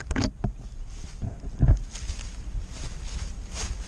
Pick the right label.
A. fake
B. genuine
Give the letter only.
B